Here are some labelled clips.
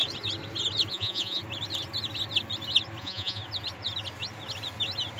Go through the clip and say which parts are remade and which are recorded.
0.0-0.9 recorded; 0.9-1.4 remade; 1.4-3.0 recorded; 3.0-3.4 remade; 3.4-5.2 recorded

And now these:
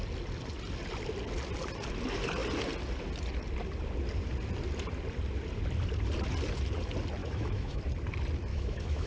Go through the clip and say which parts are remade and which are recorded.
0.0-7.2 recorded; 7.2-7.8 remade; 7.8-8.5 recorded; 8.5-9.1 remade

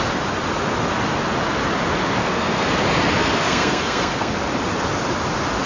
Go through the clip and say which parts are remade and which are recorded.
0.0-2.2 recorded; 2.2-2.8 remade; 2.8-3.2 recorded; 3.2-4.3 remade; 4.3-5.7 recorded

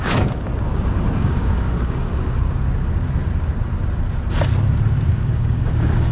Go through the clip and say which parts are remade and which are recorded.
0.0-0.5 remade; 0.5-1.2 recorded; 1.2-2.1 remade; 2.1-5.1 recorded; 5.1-6.1 remade

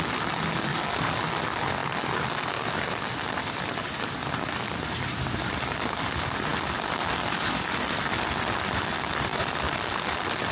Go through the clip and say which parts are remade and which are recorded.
0.0-10.5 recorded

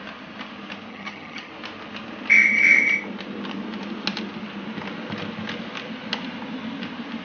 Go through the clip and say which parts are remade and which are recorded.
0.0-0.9 recorded; 0.9-1.5 remade; 1.5-7.2 recorded

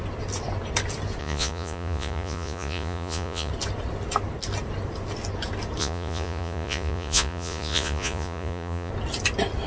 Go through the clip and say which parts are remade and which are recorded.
0.0-1.2 recorded; 1.2-3.5 remade; 3.5-5.8 recorded; 5.8-8.9 remade; 8.9-9.7 recorded